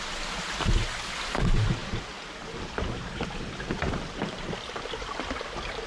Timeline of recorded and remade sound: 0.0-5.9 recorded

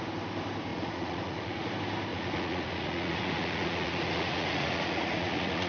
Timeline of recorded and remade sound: 0.0-0.7 recorded; 0.7-1.7 remade; 1.7-2.1 recorded; 2.1-5.7 remade

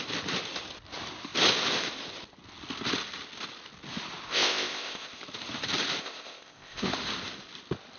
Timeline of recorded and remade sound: 0.0-4.3 recorded; 4.3-5.2 remade; 5.2-6.0 recorded; 6.0-6.9 remade; 6.9-8.0 recorded

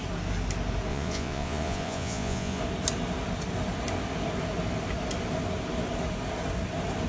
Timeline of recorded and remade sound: 0.0-0.9 recorded; 0.9-2.6 remade; 2.6-7.1 recorded